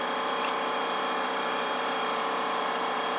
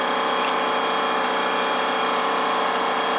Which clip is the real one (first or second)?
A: second